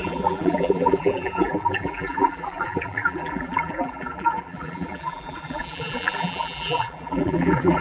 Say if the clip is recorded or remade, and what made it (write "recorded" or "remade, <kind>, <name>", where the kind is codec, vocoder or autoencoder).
remade, vocoder, BigVGAN v2